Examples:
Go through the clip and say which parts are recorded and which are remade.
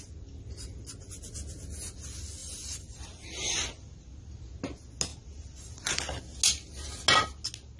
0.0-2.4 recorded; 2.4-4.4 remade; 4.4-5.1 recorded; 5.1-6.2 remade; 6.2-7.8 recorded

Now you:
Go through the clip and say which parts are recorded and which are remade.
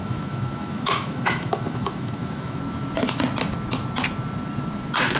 0.0-2.6 remade; 2.6-5.2 recorded